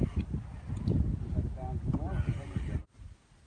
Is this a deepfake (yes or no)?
no